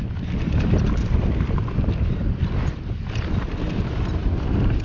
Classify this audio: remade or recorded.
recorded